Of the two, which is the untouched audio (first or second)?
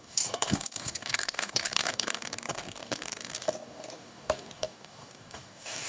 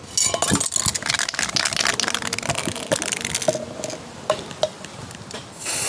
second